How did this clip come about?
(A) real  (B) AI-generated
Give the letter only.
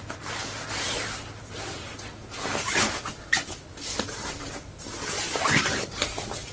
A